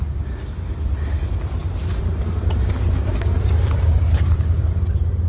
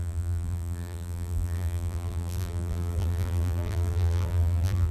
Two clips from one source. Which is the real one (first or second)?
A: first